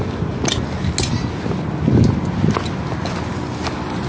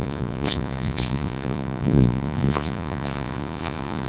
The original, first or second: first